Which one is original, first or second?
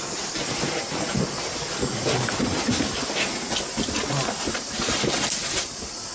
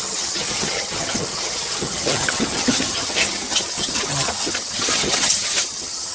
first